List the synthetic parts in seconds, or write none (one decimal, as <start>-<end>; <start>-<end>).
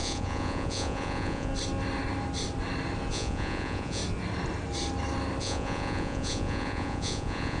0.0-1.5; 3.1-4.0; 5.4-7.6